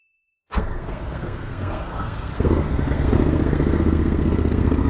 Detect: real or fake fake